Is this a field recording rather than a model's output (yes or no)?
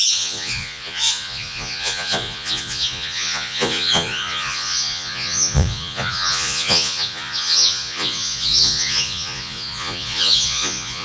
no